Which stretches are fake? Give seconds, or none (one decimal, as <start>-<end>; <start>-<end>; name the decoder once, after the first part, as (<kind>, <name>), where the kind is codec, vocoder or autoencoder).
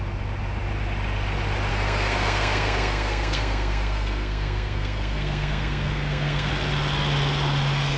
1.7-6.5 (codec, SNAC)